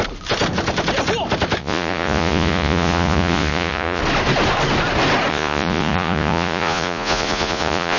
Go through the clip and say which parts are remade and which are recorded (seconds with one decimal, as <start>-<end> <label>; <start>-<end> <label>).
0.0-1.6 recorded; 1.6-4.0 remade; 4.0-5.3 recorded; 5.3-8.0 remade